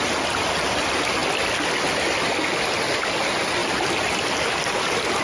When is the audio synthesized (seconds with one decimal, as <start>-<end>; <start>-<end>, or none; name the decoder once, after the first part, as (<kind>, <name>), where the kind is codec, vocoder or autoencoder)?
none